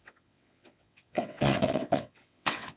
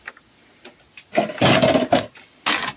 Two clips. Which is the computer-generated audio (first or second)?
first